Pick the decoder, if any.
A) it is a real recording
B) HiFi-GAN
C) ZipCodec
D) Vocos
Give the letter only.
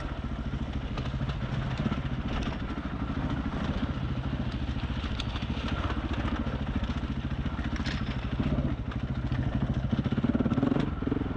A